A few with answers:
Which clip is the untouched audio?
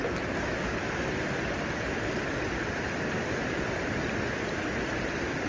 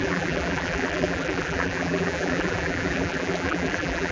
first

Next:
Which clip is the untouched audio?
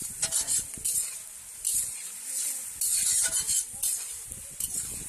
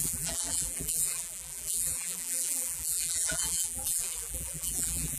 first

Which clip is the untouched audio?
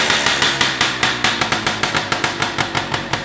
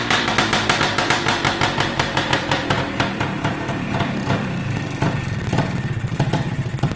first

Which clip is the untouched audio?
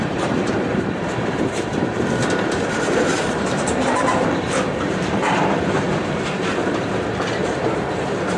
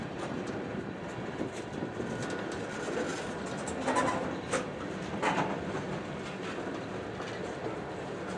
second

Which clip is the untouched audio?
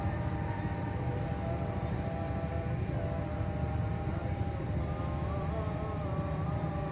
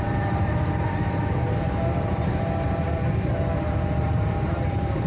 first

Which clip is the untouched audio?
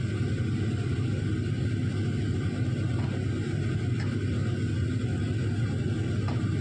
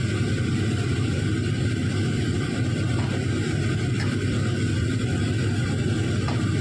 first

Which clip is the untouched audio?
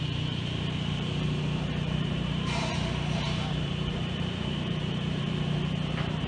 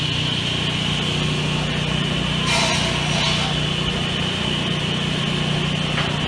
second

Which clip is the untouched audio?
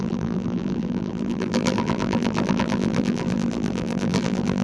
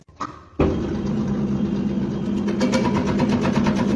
second